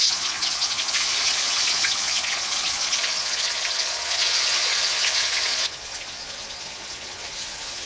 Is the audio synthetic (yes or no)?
yes